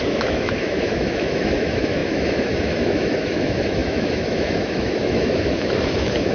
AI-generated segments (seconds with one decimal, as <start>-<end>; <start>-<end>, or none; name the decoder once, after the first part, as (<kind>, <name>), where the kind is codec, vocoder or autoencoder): 0.0-6.3 (autoencoder, DAC-VAE)